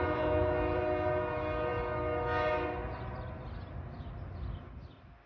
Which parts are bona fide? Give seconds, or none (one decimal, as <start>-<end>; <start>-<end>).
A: 0.0-5.3